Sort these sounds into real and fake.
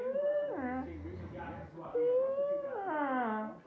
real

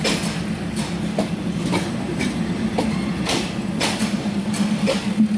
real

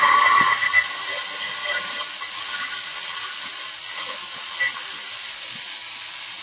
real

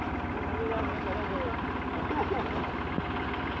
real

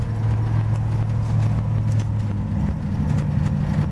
real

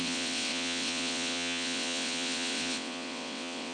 fake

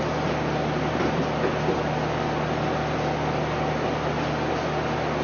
real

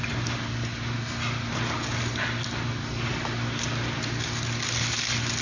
real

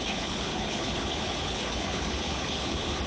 fake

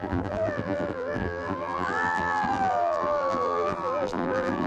fake